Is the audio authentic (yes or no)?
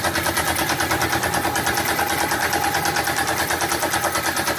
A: yes